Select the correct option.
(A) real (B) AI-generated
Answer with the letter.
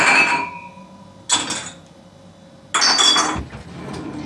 A